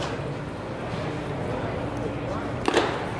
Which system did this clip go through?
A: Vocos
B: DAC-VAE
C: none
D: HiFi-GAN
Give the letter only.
C